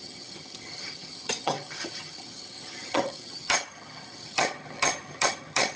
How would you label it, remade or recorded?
remade